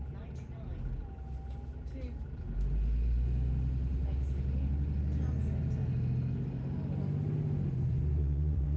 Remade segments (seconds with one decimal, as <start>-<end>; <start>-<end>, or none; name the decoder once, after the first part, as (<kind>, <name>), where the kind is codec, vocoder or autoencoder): 8.2-8.8 (vocoder, Vocos)